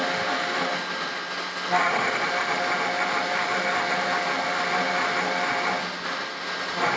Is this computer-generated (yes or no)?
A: no